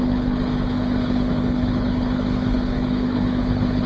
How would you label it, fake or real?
fake